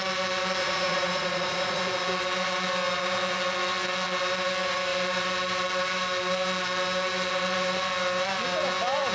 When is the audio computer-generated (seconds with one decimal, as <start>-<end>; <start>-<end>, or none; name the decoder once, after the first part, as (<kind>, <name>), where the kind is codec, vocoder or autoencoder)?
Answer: 0.6-1.8 (vocoder, Vocos)